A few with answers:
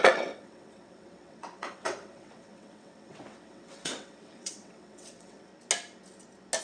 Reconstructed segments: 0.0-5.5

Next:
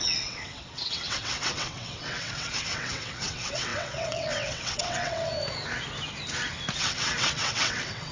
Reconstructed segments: 0.0-5.3; 6.8-8.1

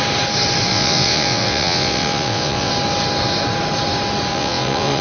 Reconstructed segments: 0.7-2.7; 4.3-5.0